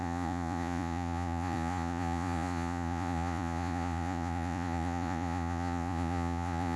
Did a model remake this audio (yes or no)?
yes